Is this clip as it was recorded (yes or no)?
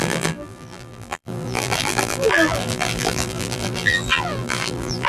no